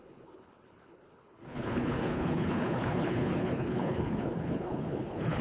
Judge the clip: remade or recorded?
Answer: remade